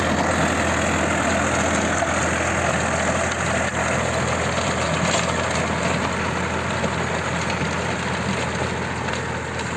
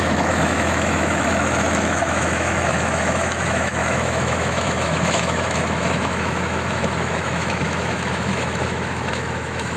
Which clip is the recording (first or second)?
first